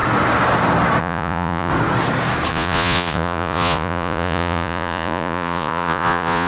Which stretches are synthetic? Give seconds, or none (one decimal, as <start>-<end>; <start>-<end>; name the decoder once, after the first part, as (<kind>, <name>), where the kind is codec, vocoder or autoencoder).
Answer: 1.0-1.7 (vocoder, Vocos); 2.5-6.5

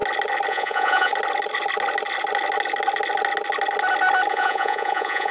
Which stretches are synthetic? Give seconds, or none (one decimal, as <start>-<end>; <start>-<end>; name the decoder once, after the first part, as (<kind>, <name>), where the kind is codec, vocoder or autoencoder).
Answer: 0.5-1.1 (vocoder, Vocos); 4.3-5.3

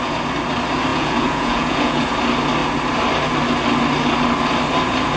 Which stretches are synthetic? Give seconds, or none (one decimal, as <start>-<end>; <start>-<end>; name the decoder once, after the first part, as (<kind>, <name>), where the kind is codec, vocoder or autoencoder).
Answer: 0.9-2.1 (vocoder, Vocos)